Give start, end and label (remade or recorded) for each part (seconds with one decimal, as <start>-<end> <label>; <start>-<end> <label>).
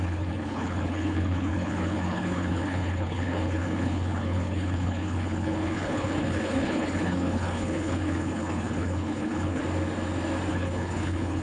0.0-9.6 remade; 9.6-10.5 recorded; 10.5-11.4 remade